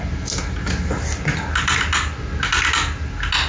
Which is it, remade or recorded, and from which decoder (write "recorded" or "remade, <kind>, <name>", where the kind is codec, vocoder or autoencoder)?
recorded